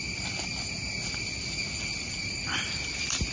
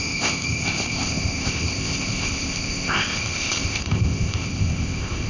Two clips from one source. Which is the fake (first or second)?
second